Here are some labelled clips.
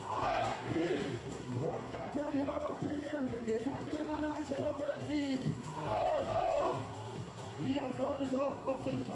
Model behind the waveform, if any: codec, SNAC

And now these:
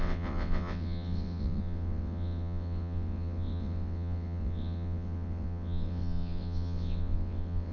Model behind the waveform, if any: vocoder, WaveNeXt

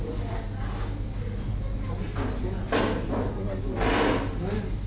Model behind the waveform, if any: none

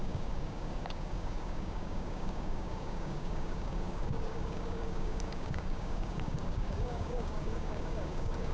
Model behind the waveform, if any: codec, DAC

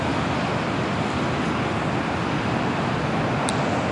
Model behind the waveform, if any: none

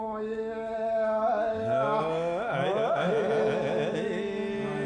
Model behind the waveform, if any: none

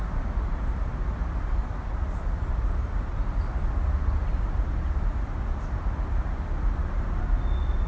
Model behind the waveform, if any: none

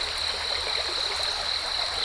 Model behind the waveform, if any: none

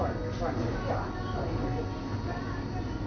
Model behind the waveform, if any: none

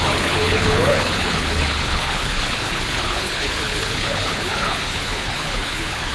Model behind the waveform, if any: codec, HILCodec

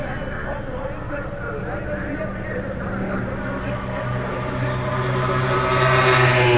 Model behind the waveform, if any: none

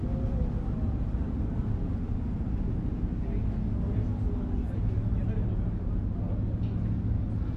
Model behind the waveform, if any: none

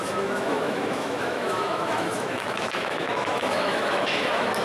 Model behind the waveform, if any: autoencoder, DAC-VAE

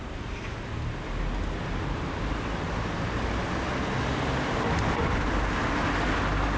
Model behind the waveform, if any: none